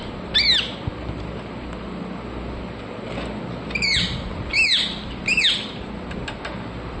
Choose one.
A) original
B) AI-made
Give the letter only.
A